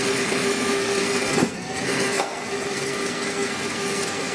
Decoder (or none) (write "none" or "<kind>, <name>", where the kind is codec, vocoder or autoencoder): codec, SNAC